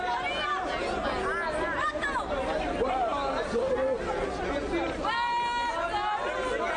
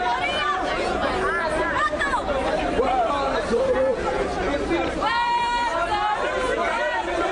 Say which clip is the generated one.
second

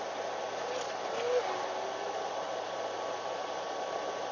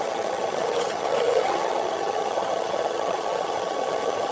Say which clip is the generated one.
second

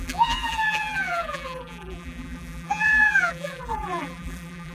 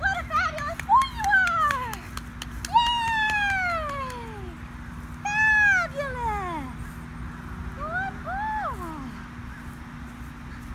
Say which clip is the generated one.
first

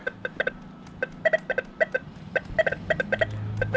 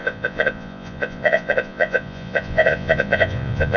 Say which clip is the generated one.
second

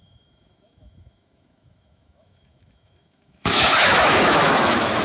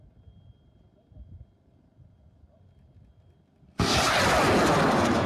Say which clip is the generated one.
first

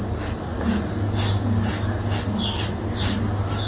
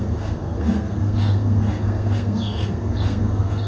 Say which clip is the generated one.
second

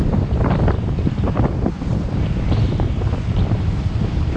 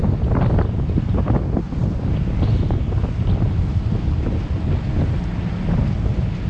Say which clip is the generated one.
first